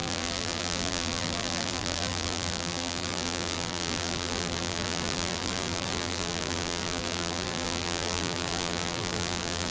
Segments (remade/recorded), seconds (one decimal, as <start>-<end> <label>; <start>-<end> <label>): 0.0-9.7 remade